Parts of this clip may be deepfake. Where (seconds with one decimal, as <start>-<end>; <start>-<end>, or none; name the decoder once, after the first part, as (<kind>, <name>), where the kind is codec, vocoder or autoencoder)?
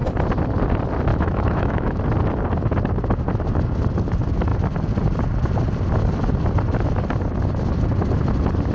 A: 1.1-2.0 (autoencoder, DAC-VAE)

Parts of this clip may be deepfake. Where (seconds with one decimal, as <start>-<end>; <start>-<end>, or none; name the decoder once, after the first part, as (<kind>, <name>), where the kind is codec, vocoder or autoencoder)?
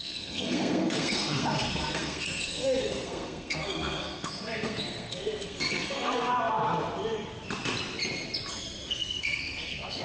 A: 0.0-6.3 (codec, SNAC); 8.9-10.0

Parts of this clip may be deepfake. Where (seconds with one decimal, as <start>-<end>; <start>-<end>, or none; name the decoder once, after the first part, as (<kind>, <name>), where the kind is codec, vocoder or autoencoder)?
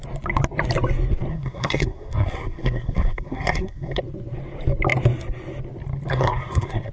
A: 1.3-4.0 (codec, SNAC); 6.1-6.9